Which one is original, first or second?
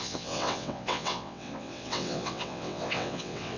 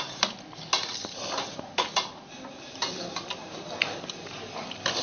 second